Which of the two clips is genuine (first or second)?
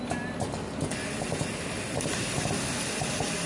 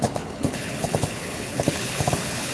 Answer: first